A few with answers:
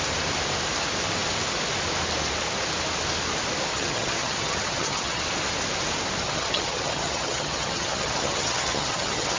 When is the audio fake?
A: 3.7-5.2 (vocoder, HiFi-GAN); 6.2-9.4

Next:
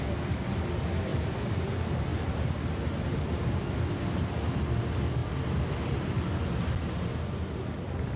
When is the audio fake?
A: 1.1-1.7 (vocoder, BigVGAN v2); 5.2-6.3

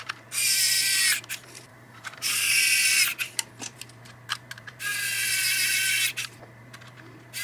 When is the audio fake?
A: 1.7-2.6 (codec, DAC)